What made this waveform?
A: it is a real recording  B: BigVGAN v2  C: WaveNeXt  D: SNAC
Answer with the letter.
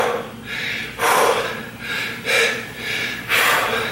B